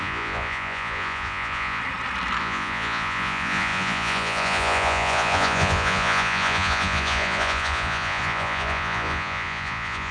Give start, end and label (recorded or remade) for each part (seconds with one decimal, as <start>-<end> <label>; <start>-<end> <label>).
0.0-1.8 remade; 1.8-2.4 recorded; 2.4-10.1 remade